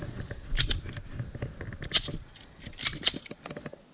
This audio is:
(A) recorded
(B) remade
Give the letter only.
A